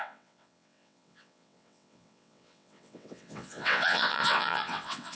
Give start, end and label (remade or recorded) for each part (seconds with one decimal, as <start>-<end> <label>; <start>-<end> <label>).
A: 0.0-5.1 remade

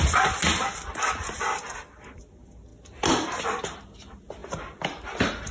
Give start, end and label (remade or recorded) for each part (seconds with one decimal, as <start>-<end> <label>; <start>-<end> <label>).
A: 0.0-5.5 recorded

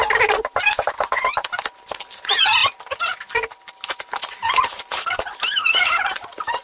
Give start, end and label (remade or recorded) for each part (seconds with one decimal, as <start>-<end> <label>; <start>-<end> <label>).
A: 0.0-2.6 remade; 2.6-4.0 recorded; 4.0-6.6 remade

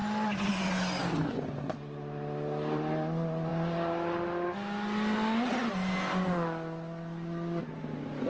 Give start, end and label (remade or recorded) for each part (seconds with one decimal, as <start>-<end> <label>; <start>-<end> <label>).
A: 0.0-8.3 recorded